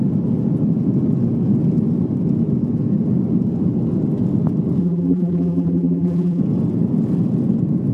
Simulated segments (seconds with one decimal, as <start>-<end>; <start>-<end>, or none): 4.8-6.4